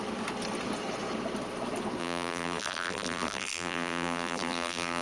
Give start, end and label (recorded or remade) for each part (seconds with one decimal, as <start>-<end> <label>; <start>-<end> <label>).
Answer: 0.0-2.0 recorded; 2.0-5.0 remade